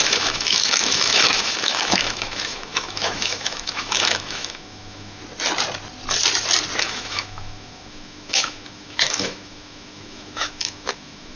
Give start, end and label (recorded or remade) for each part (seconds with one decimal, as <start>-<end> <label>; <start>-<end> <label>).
0.0-5.2 remade; 5.2-6.8 recorded; 6.8-11.4 remade